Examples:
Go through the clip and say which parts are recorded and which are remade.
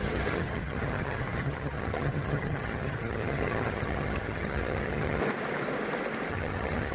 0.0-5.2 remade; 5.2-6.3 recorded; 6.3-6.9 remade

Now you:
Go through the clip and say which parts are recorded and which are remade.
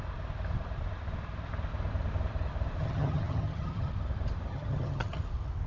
0.0-2.8 recorded; 2.8-3.9 remade; 3.9-4.5 recorded; 4.5-5.2 remade; 5.2-5.7 recorded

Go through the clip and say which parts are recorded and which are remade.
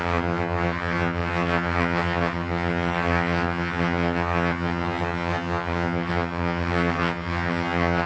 0.0-8.1 remade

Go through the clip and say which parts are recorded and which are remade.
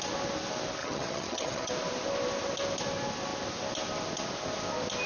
0.0-0.8 recorded; 0.8-1.7 remade; 1.7-5.1 recorded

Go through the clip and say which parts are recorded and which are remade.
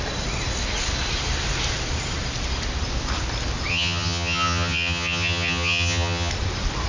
0.0-3.7 recorded; 3.7-6.3 remade; 6.3-6.9 recorded